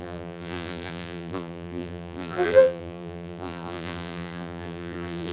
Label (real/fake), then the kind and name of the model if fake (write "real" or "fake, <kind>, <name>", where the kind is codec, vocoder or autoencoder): fake, vocoder, BigVGAN v2